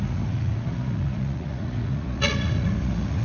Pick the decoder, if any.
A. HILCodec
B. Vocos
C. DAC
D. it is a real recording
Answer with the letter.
B